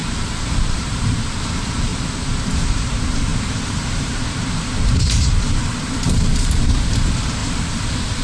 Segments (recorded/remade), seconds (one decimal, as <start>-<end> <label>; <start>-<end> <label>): 0.0-1.9 remade; 1.9-2.4 recorded; 2.4-8.2 remade